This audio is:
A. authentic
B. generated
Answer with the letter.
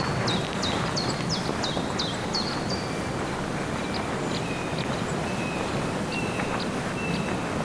A